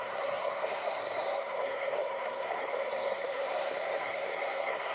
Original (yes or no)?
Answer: no